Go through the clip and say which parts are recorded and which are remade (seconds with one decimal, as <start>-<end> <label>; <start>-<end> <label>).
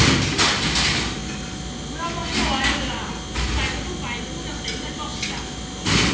0.0-6.1 recorded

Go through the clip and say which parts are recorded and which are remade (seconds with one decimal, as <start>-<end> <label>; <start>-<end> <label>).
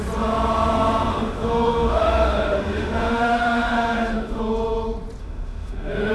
0.0-1.1 recorded; 1.1-4.4 remade; 4.4-5.2 recorded; 5.2-6.1 remade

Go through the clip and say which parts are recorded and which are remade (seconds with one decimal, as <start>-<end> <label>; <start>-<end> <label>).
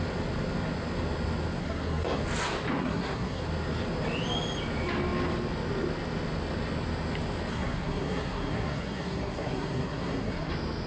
0.0-1.6 recorded; 1.6-2.2 remade; 2.2-2.8 recorded; 2.8-3.4 remade; 3.4-7.5 recorded; 7.5-10.5 remade; 10.5-10.9 recorded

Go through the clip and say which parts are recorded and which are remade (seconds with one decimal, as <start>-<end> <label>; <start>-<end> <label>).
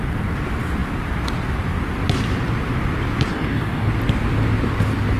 0.0-3.3 recorded; 3.3-3.9 remade; 3.9-5.2 recorded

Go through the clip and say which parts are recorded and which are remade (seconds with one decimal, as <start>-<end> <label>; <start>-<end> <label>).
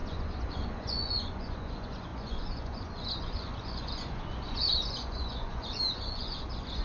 0.0-6.8 remade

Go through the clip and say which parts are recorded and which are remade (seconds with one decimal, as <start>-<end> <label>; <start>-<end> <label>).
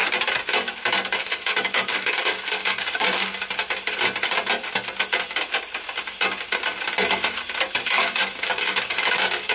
0.0-1.2 recorded; 1.2-3.3 remade; 3.3-7.8 recorded; 7.8-9.5 remade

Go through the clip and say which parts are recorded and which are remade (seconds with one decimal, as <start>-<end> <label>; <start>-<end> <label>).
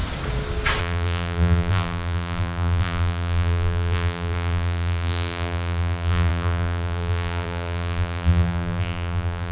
0.0-0.8 recorded; 0.8-9.5 remade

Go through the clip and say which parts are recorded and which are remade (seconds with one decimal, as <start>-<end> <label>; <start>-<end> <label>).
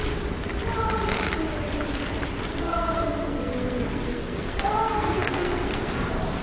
0.0-2.5 recorded; 2.5-5.9 remade; 5.9-6.4 recorded